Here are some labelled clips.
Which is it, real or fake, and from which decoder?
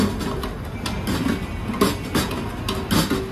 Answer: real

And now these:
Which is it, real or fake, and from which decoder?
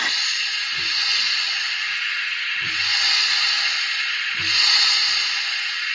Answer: real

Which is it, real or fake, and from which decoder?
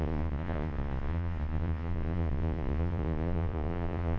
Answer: fake, vocoder, Vocos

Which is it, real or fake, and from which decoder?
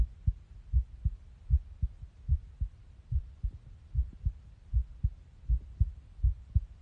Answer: real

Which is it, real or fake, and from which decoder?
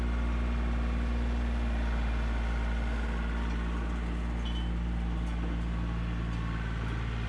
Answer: real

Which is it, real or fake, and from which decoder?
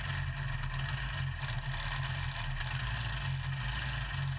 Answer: real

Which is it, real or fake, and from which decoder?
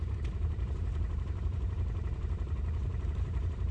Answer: fake, vocoder, BigVGAN v2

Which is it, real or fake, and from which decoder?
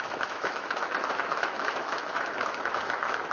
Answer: fake, autoencoder, DAC-VAE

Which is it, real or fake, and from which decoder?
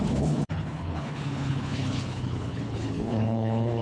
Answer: fake, codec, HILCodec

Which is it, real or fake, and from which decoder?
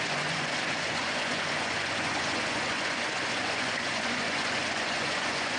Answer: fake, vocoder, Vocos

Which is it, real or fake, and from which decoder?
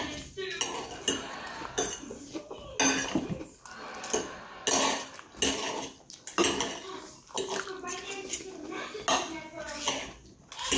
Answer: real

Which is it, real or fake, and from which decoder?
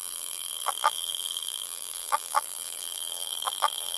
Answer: fake, vocoder, BigVGAN v2